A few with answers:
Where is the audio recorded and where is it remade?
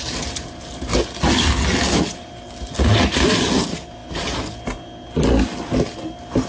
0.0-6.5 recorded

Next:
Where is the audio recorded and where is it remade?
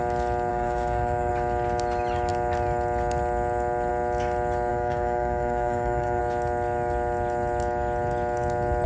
0.0-0.5 recorded; 0.5-1.3 remade; 1.3-4.7 recorded; 4.7-6.2 remade; 6.2-8.9 recorded